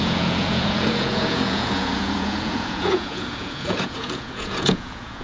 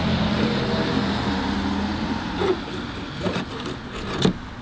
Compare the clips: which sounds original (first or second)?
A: second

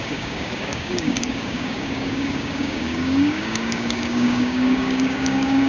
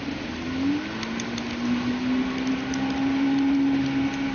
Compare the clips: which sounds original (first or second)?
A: second